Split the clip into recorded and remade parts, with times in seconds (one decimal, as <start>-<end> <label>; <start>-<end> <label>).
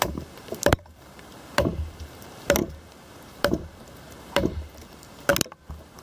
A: 0.0-5.3 remade; 5.3-6.0 recorded